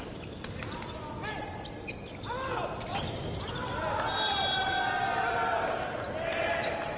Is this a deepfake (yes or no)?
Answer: no